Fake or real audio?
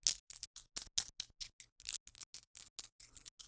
real